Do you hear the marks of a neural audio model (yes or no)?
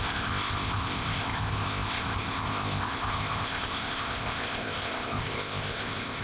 yes